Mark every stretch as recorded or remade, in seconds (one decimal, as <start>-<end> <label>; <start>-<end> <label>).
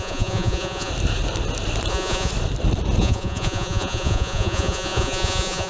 0.0-0.9 remade; 0.9-1.9 recorded; 1.9-2.3 remade; 2.3-3.0 recorded; 3.0-5.7 remade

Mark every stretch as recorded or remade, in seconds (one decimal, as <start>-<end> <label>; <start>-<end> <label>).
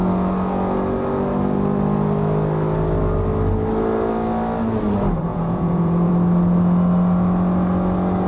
0.0-5.3 recorded; 5.3-6.1 remade; 6.1-8.3 recorded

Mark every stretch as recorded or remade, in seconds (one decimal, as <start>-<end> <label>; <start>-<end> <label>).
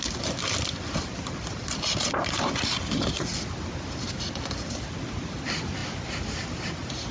0.0-7.1 recorded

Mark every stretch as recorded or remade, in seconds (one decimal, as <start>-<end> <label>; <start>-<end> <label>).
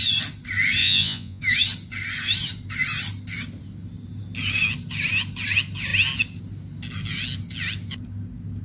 0.0-0.8 recorded; 0.8-1.4 remade; 1.4-8.6 recorded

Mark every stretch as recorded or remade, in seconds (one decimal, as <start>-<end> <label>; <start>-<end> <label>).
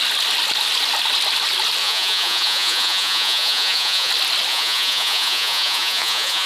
0.0-1.8 recorded; 1.8-4.1 remade; 4.1-4.5 recorded; 4.5-6.5 remade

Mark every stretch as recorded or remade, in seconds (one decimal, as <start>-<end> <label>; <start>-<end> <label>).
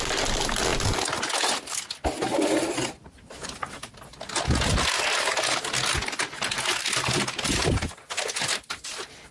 0.0-9.3 recorded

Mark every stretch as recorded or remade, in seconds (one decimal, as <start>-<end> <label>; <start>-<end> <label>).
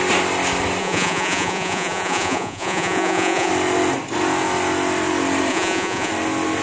0.0-0.8 recorded; 0.8-3.5 remade; 3.5-5.5 recorded; 5.5-6.1 remade; 6.1-6.6 recorded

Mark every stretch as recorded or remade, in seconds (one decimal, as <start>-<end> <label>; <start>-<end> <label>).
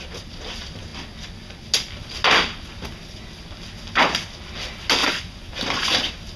0.0-5.0 recorded; 5.0-5.5 remade; 5.5-6.4 recorded